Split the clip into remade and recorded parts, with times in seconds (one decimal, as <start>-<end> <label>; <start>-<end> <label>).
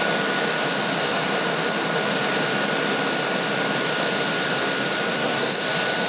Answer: 0.0-5.1 recorded; 5.1-5.6 remade; 5.6-6.1 recorded